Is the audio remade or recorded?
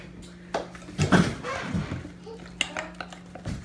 recorded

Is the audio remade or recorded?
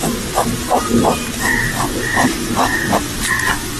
recorded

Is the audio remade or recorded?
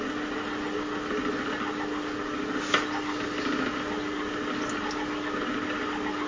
recorded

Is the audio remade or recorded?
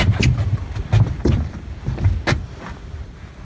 recorded